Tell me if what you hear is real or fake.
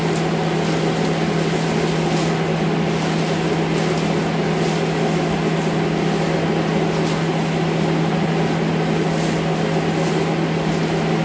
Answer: real